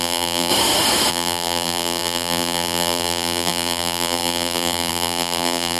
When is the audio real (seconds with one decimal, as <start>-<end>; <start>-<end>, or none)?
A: 0.5-1.1